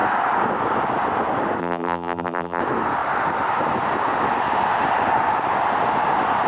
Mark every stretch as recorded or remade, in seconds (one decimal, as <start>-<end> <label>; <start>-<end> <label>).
0.0-1.6 recorded; 1.6-2.6 remade; 2.6-6.5 recorded